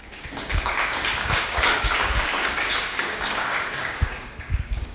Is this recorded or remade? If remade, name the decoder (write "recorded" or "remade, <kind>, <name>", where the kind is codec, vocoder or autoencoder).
remade, codec, DAC